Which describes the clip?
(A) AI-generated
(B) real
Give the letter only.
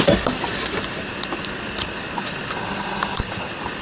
B